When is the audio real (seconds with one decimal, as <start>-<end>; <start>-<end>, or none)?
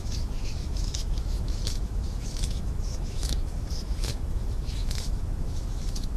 none